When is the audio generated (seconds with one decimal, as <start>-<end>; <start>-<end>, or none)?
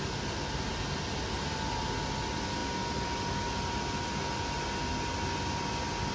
none